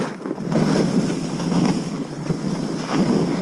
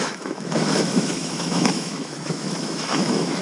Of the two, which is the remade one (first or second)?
second